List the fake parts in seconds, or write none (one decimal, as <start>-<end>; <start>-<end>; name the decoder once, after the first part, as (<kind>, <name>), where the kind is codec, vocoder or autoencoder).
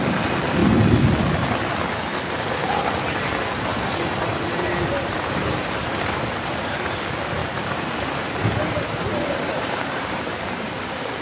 3.7-7.0 (vocoder, BigVGAN v2); 7.4-10.2